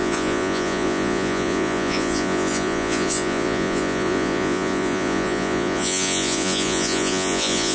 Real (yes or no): no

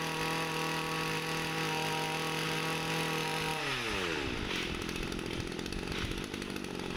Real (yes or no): yes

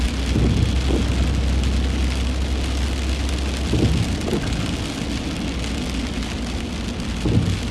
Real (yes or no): yes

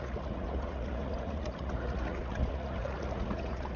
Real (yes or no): no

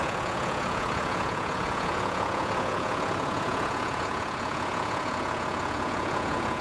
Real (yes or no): no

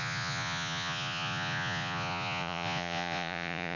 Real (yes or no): no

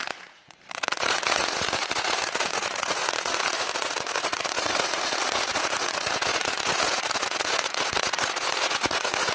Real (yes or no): no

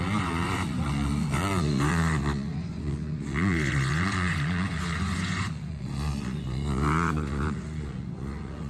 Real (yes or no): no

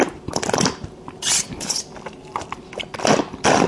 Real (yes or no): yes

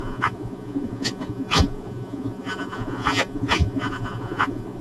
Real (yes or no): no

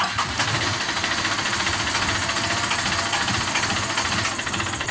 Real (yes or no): yes